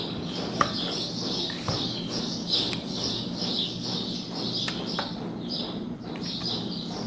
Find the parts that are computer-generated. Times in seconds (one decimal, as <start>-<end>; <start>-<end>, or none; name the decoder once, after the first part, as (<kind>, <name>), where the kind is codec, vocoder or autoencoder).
0.0-3.9 (codec, DAC); 6.6-7.1